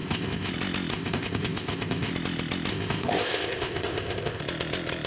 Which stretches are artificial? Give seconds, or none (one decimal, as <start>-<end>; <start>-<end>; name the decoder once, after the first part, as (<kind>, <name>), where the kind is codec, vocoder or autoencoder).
0.0-0.5 (codec, ZipCodec); 0.9-2.1; 2.7-4.4